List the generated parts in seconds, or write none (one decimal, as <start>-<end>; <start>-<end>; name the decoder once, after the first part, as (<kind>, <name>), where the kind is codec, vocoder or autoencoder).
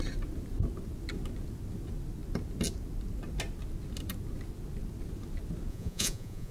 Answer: 5.7-6.5 (vocoder, Vocos)